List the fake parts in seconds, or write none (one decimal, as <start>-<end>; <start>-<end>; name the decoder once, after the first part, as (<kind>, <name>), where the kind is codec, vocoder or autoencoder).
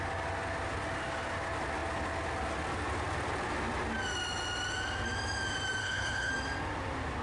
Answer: 5.8-6.3 (codec, HILCodec)